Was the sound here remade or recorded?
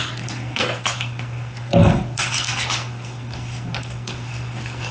remade